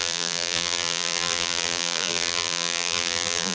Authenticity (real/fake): fake